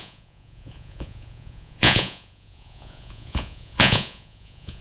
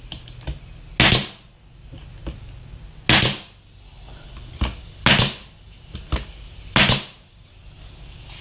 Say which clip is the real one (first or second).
second